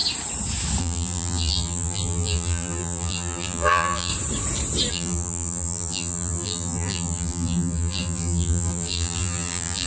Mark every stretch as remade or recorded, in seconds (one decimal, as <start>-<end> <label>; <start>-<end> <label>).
0.0-0.8 recorded; 0.8-4.1 remade; 4.1-4.9 recorded; 4.9-9.9 remade